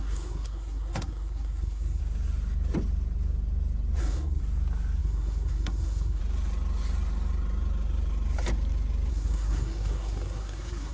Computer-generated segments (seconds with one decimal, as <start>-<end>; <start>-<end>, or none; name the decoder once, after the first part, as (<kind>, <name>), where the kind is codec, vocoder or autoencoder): 0.0-2.0 (codec, SNAC); 4.0-4.4; 5.0-6.2; 9.1-10.9